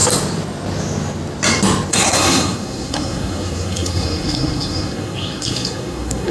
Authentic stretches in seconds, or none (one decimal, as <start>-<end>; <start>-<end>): 0.0-1.9